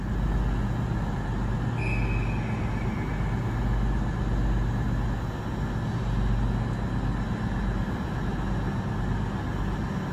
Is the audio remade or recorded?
recorded